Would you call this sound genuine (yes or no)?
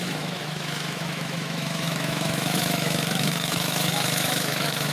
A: no